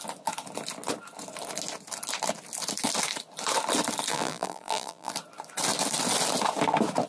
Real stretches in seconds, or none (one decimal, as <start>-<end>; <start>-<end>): 0.0-4.1; 5.1-7.1